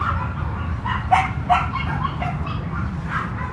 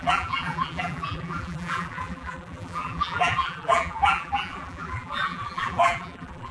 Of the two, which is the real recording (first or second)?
first